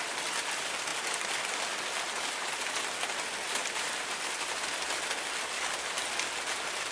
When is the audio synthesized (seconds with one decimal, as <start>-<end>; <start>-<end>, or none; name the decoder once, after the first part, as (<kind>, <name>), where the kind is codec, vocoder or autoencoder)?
3.6-4.6 (vocoder, BigVGAN v2)